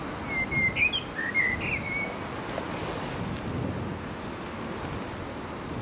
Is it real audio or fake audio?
real